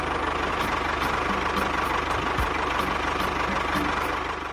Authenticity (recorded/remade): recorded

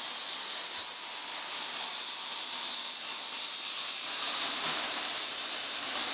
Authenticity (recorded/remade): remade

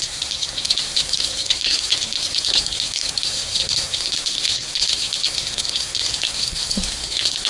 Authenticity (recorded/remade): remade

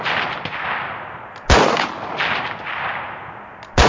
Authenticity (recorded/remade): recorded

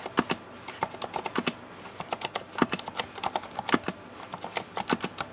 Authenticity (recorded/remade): recorded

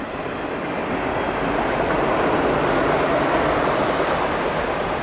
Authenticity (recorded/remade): remade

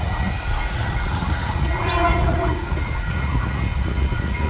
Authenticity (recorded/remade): remade